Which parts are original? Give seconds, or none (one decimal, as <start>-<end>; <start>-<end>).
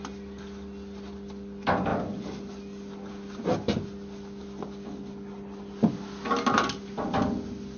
0.0-7.8